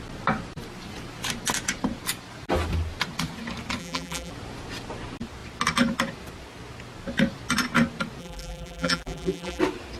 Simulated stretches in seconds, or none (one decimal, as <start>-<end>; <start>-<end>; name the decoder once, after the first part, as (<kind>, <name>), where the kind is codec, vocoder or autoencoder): 3.8-4.3 (vocoder, BigVGAN v2); 8.2-9.6